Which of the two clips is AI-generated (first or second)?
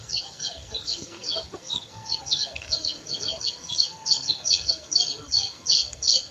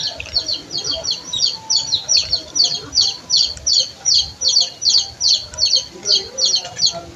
first